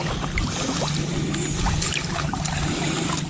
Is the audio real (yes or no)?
yes